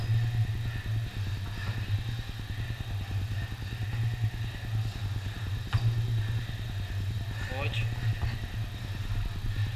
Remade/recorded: recorded